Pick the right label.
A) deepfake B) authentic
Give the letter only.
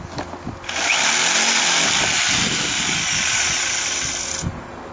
B